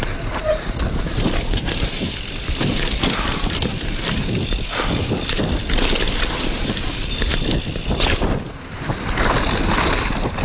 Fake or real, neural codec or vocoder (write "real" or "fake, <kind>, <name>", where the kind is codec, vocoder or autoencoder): fake, vocoder, BigVGAN v2